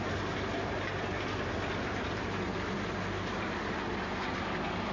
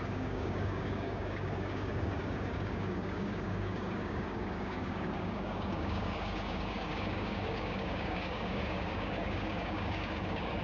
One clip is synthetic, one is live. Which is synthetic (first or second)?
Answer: second